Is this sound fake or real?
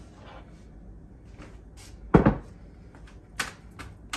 real